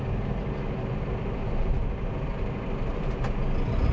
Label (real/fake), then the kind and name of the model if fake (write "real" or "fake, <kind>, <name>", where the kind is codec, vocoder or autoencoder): real